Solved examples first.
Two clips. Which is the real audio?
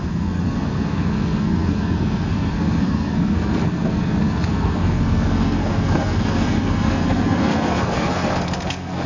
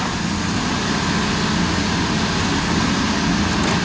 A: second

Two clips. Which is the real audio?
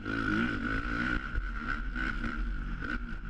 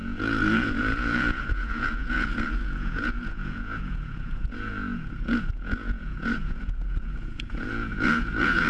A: first